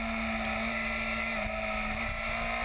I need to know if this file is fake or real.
real